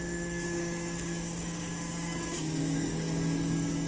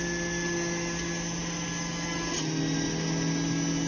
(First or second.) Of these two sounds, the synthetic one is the first